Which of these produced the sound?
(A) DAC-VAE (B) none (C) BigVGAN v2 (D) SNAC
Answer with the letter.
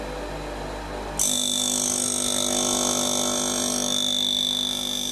B